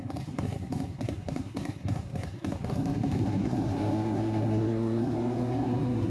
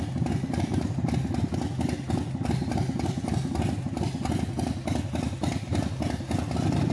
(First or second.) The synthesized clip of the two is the first